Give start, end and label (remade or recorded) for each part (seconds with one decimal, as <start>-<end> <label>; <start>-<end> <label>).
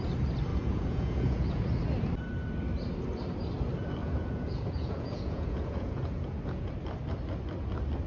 0.0-0.5 recorded; 0.5-1.7 remade; 1.7-4.0 recorded; 4.0-6.7 remade; 6.7-8.1 recorded